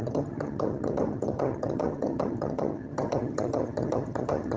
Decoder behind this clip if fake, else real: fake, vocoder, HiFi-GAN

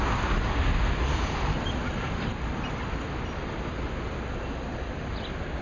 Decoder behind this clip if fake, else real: real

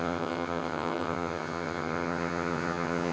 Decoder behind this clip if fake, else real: fake, vocoder, HiFi-GAN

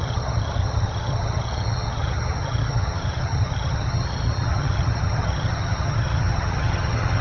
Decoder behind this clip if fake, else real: fake, vocoder, HiFi-GAN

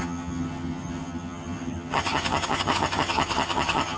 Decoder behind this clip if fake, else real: fake, vocoder, HiFi-GAN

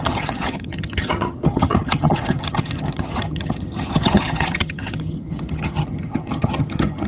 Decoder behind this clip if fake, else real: fake, vocoder, HiFi-GAN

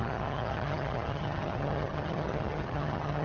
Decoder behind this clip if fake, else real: fake, vocoder, HiFi-GAN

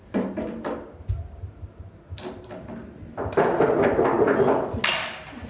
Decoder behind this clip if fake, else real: real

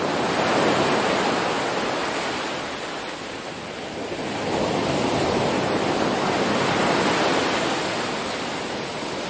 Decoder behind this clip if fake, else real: real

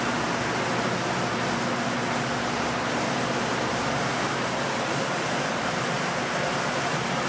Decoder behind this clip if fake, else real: real